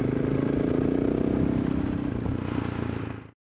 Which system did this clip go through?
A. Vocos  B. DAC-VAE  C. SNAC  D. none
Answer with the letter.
D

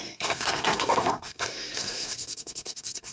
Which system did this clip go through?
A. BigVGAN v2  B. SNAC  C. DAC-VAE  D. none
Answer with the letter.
B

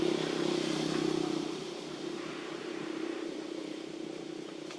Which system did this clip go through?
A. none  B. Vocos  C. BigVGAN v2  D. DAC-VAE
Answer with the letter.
C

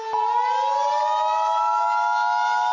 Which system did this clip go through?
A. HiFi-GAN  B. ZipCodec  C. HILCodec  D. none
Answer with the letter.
D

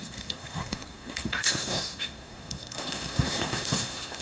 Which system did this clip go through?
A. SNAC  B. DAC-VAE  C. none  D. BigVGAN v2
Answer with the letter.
A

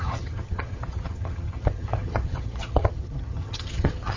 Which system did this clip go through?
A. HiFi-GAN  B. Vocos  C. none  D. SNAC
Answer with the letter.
A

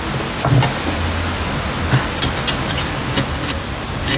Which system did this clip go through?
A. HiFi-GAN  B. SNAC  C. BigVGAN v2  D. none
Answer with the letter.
D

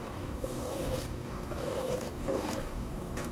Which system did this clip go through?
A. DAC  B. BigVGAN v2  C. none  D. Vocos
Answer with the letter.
A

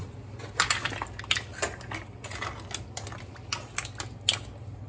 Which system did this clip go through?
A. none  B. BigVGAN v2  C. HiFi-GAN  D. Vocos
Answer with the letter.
A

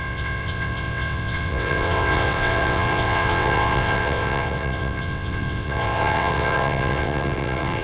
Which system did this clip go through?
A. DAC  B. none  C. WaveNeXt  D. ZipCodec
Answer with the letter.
C